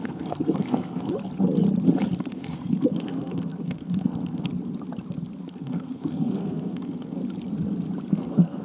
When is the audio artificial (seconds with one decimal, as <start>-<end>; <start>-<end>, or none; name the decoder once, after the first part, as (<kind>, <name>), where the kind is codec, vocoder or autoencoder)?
0.0-1.1 (codec, SNAC); 2.3-4.5; 5.5-7.2; 8.1-8.6